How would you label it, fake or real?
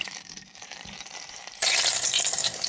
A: fake